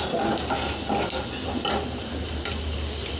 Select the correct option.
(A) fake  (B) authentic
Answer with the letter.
B